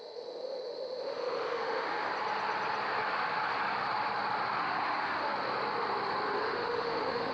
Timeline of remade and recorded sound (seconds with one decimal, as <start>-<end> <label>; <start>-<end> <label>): 0.0-2.1 remade; 2.1-4.6 recorded; 4.6-5.3 remade; 5.3-6.4 recorded; 6.4-7.3 remade